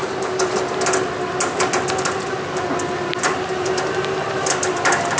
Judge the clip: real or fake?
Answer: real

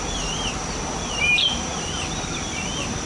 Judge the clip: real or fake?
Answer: real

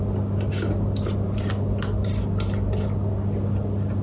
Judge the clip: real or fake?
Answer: real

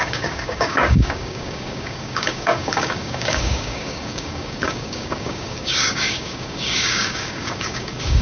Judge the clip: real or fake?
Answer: fake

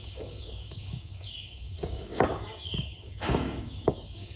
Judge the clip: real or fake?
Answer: fake